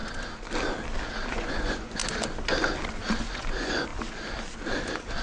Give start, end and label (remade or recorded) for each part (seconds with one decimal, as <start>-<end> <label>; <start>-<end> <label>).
0.0-1.3 recorded; 1.3-2.0 remade; 2.0-3.2 recorded; 3.2-3.9 remade; 3.9-5.2 recorded